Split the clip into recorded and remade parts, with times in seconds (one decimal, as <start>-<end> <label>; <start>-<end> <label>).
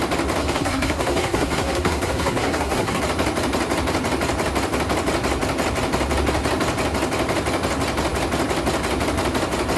0.0-0.4 recorded; 0.4-3.0 remade; 3.0-9.8 recorded